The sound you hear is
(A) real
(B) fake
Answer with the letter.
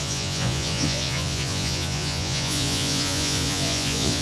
B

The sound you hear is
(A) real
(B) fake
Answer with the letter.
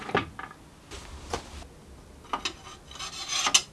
A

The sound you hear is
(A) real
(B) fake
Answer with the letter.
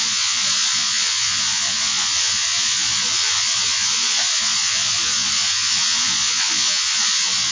B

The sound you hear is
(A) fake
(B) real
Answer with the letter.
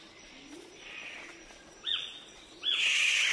A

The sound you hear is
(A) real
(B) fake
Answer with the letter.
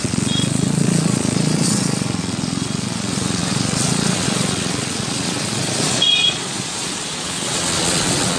B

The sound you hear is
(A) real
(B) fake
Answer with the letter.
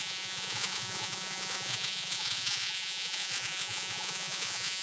B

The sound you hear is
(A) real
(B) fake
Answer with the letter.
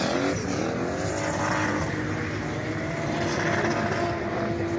A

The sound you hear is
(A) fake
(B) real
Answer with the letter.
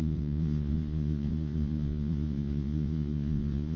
A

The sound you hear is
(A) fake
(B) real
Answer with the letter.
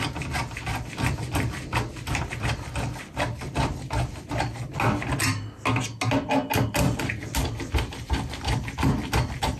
B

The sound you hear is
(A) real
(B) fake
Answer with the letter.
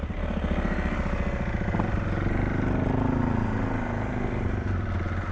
A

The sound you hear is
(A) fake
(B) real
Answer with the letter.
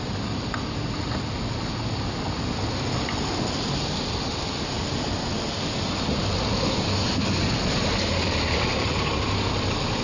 B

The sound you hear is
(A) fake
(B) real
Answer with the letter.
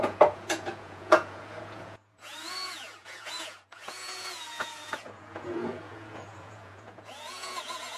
A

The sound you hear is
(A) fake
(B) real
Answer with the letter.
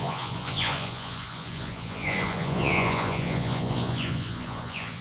A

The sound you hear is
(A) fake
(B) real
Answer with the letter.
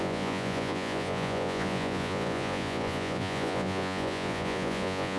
A